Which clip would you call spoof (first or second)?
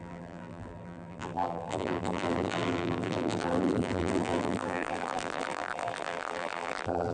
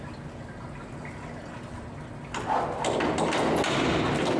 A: first